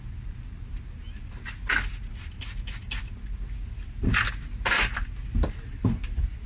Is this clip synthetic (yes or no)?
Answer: no